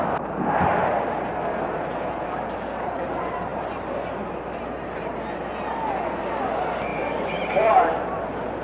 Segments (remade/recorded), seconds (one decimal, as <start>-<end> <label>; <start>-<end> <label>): 0.0-8.6 recorded